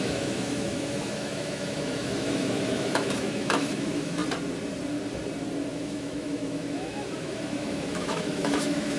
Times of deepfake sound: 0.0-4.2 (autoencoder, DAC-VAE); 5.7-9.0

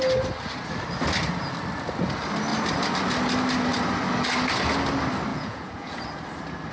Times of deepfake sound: 5.3-6.0 (vocoder, Vocos)

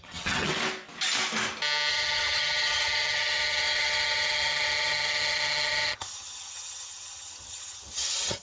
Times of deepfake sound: 0.0-0.5 (vocoder, HiFi-GAN); 1.9-8.4

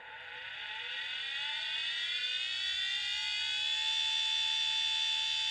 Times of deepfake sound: 0.0-2.2 (vocoder, BigVGAN v2)

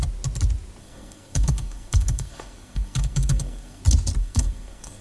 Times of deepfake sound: 0.8-3.8 (codec, SNAC); 4.2-5.0